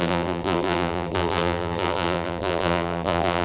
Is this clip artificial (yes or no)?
yes